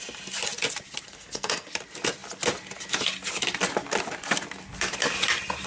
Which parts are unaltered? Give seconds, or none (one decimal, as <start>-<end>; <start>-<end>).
0.0-1.1; 1.7-5.7

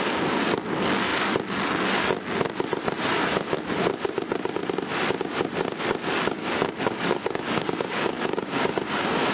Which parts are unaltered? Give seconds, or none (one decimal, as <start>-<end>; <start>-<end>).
0.0-6.4

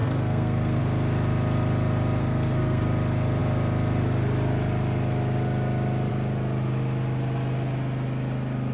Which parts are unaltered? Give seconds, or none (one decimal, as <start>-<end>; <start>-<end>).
0.8-2.2; 2.8-8.7

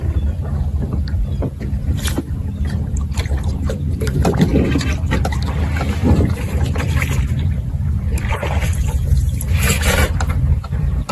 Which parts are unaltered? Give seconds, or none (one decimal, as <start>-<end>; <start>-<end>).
1.3-1.9; 4.5-6.4

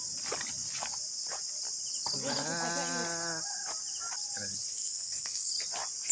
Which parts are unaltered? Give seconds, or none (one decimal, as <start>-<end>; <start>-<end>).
0.0-4.7; 5.5-6.1

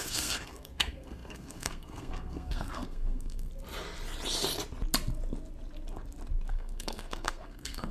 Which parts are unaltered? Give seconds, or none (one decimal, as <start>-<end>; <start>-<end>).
3.5-6.5

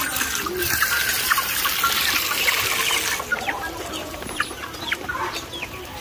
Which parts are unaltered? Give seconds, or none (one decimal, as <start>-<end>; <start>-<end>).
0.0-0.6; 1.6-3.3; 5.3-6.0